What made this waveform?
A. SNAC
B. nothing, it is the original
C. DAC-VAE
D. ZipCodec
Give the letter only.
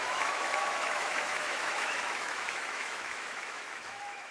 C